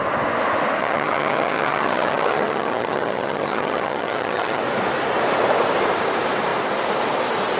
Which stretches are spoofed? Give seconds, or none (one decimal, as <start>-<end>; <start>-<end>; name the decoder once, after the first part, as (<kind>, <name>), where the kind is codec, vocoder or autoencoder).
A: 0.8-4.6 (vocoder, HiFi-GAN)